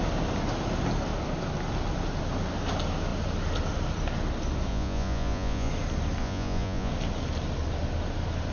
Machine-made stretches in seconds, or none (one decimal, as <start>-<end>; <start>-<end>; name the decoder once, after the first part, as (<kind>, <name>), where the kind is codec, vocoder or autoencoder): 4.7-5.7 (vocoder, Vocos); 6.2-6.9